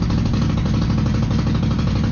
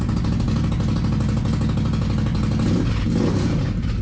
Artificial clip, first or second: first